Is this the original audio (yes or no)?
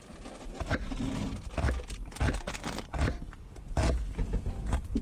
yes